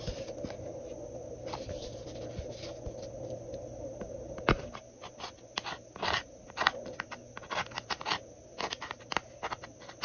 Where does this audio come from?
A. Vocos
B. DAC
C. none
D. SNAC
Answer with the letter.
C